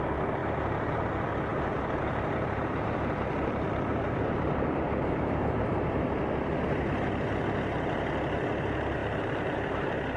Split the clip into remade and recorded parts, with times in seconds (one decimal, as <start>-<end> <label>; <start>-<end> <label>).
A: 0.0-0.4 recorded; 0.4-1.1 remade; 1.1-1.5 recorded; 1.5-5.6 remade; 5.6-9.0 recorded; 9.0-10.2 remade